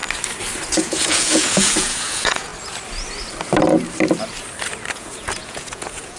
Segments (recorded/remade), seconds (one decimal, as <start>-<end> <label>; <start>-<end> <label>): 0.0-0.7 recorded; 0.7-2.5 remade; 2.5-4.9 recorded; 4.9-6.2 remade